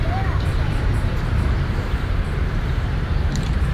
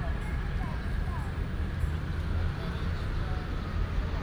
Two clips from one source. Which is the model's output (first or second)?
first